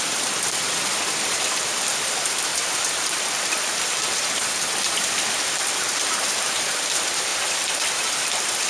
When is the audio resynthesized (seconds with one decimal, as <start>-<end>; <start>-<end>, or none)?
0.0-7.3